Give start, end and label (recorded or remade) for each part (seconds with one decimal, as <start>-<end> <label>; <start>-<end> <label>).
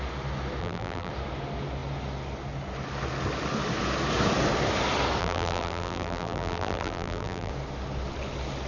0.0-0.6 recorded; 0.6-1.1 remade; 1.1-5.2 recorded; 5.2-7.5 remade; 7.5-8.7 recorded